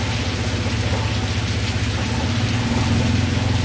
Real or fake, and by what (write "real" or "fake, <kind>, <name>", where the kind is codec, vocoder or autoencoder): real